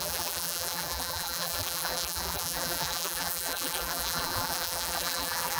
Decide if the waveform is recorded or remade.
remade